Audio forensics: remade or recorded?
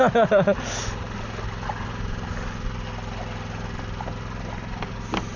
recorded